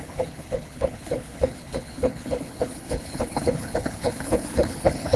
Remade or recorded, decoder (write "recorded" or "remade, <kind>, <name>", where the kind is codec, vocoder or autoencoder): remade, codec, HILCodec